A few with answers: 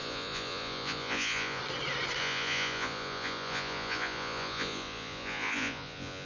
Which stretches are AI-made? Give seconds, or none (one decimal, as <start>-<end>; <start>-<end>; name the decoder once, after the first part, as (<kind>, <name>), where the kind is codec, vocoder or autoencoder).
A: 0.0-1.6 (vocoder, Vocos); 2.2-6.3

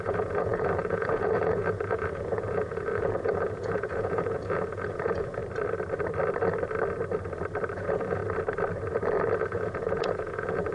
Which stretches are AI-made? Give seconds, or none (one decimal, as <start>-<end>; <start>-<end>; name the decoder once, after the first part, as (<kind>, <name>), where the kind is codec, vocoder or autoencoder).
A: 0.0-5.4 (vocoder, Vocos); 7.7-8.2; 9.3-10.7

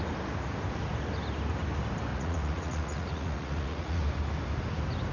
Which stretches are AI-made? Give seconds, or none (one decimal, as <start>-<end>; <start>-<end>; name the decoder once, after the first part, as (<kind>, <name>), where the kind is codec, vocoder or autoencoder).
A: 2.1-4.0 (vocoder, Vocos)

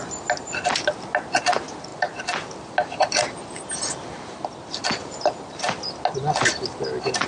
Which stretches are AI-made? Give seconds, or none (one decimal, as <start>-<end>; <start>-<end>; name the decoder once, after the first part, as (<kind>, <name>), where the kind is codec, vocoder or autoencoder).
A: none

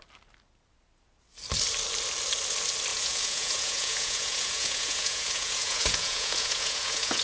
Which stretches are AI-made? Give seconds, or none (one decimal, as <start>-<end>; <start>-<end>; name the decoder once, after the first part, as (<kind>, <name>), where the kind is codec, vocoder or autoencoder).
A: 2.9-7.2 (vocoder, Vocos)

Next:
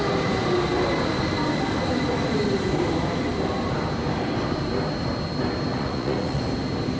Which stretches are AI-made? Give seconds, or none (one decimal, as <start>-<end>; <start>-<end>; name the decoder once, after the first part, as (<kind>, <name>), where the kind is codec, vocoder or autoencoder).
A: 5.7-6.4 (vocoder, Vocos)